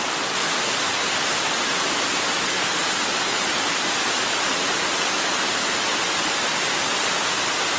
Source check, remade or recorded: recorded